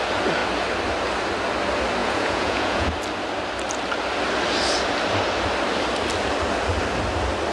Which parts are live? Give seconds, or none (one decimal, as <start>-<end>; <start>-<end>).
0.0-2.0; 2.9-7.5